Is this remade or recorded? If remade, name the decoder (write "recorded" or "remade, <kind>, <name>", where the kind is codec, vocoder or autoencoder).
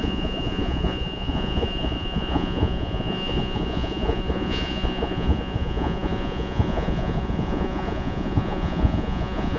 remade, vocoder, Vocos